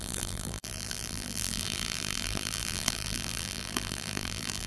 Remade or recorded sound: remade